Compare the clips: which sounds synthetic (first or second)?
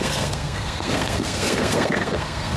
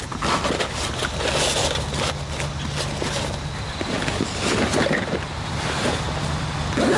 first